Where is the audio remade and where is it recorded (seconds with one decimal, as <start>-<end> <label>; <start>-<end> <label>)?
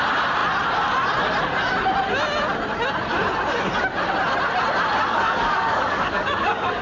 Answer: 0.0-5.1 recorded; 5.1-6.8 remade